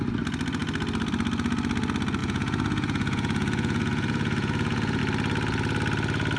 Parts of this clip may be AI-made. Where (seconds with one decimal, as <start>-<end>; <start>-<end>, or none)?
2.2-5.0